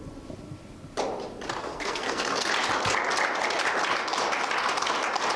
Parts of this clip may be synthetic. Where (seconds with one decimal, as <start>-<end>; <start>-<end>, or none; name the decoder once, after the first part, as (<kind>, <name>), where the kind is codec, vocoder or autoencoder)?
1.6-2.5 (codec, SNAC)